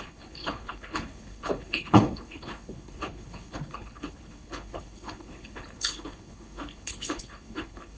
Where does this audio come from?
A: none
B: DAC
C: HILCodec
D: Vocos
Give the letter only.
C